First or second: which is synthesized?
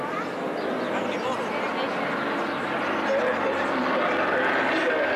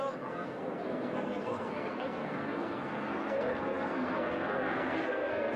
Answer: second